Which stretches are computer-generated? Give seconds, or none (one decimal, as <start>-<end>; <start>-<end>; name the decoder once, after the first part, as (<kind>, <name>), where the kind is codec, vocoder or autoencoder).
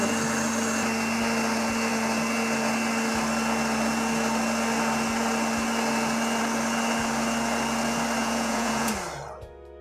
8.2-8.9 (vocoder, Vocos)